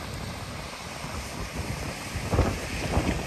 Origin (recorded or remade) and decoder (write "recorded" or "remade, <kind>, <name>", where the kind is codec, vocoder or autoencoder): recorded